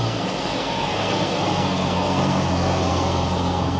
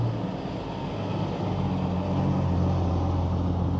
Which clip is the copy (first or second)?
first